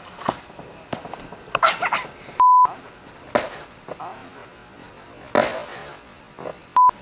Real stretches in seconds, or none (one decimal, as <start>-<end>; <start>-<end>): 0.0-7.0